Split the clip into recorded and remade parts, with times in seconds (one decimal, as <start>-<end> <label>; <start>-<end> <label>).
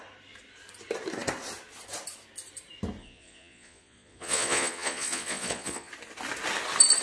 0.0-3.0 recorded; 3.0-5.9 remade; 5.9-7.0 recorded